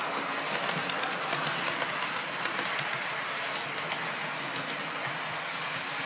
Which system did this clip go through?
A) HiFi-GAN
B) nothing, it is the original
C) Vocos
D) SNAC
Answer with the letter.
B